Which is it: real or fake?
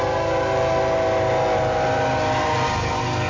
real